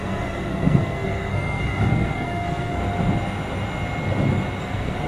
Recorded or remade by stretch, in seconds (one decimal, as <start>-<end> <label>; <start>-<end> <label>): 0.0-2.8 remade; 2.8-4.6 recorded; 4.6-5.1 remade